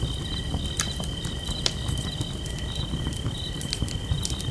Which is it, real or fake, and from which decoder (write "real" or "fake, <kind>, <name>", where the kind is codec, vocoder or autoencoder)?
real